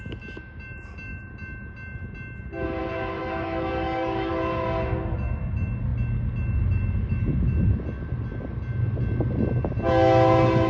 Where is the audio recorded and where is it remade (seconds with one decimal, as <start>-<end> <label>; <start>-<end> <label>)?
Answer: 0.0-3.2 recorded; 3.2-4.3 remade; 4.3-10.7 recorded